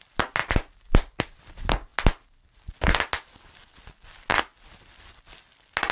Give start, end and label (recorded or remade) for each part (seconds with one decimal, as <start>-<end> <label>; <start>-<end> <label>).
0.0-5.9 recorded